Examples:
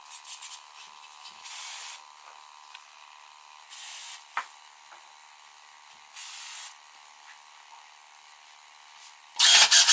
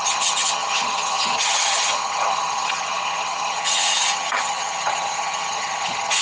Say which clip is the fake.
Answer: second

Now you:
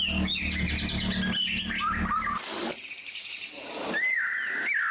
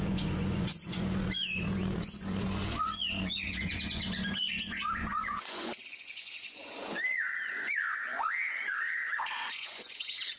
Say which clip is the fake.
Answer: second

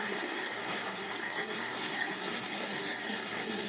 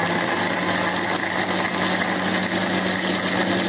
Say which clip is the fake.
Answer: first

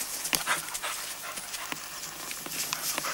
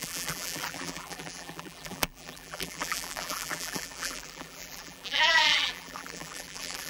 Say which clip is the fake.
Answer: second